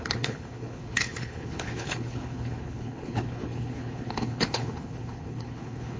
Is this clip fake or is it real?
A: fake